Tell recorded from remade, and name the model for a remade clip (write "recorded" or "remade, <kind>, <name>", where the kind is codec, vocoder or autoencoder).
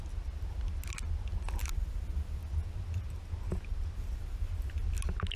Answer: recorded